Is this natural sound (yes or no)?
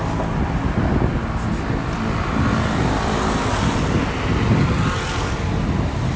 yes